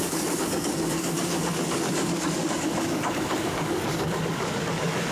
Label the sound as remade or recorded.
remade